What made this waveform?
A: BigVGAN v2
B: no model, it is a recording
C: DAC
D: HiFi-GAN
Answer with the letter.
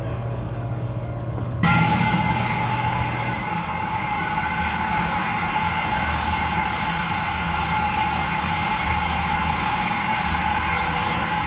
C